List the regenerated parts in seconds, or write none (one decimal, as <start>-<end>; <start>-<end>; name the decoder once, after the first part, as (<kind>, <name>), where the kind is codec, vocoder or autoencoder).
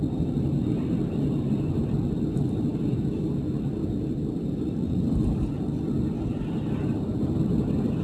none